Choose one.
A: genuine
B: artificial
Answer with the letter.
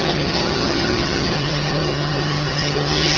B